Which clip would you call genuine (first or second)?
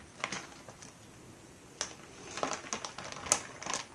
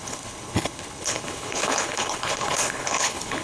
first